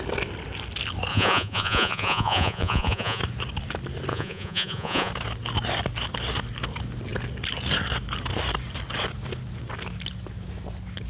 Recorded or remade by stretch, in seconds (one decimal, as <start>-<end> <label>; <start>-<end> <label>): 0.0-1.1 recorded; 1.1-3.2 remade; 3.2-4.1 recorded; 4.1-5.1 remade; 5.1-11.1 recorded